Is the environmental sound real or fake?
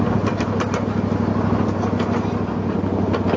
real